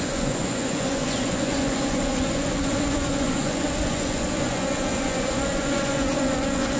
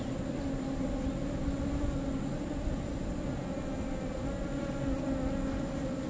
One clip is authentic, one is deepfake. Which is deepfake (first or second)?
first